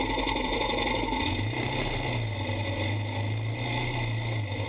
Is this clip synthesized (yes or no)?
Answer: no